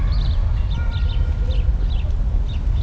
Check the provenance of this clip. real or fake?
real